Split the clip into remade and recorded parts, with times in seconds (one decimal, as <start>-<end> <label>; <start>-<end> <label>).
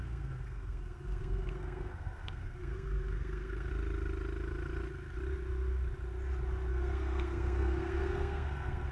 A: 0.0-3.7 remade; 3.7-6.7 recorded; 6.7-8.9 remade